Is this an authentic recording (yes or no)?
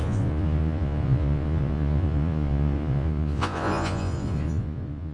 no